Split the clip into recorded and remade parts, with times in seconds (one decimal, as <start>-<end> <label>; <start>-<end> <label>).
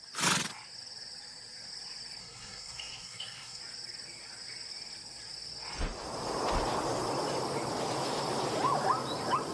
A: 0.0-2.2 recorded; 2.2-3.6 remade; 3.6-9.5 recorded